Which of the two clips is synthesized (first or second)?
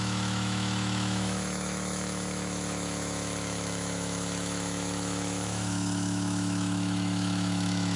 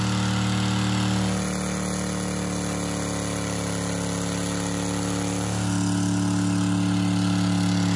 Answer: first